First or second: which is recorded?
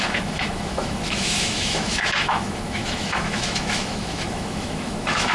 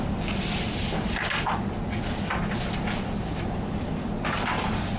second